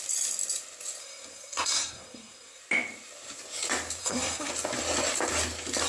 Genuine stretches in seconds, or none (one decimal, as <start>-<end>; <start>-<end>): 0.0-1.0; 2.6-4.0; 4.5-5.9